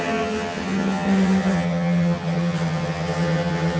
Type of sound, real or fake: fake